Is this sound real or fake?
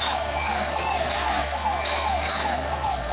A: fake